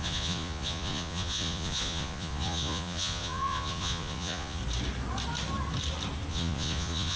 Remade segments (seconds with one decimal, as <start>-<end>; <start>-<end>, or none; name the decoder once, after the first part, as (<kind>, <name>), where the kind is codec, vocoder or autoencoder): 0.0-4.6 (vocoder, Vocos); 6.3-7.2